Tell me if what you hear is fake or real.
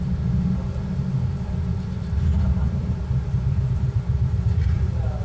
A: fake